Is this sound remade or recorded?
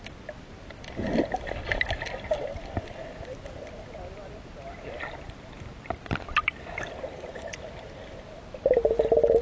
recorded